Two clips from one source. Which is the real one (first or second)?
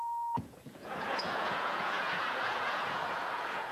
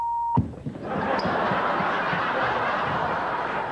second